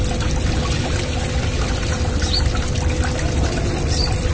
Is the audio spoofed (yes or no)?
no